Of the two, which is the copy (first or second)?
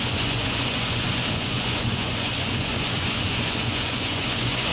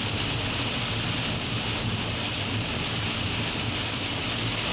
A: first